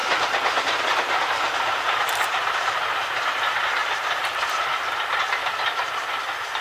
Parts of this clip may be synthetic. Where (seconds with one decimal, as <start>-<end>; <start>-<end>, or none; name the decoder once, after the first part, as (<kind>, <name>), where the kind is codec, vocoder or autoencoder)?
0.8-6.6 (vocoder, BigVGAN v2)